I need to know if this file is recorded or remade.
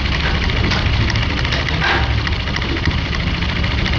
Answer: recorded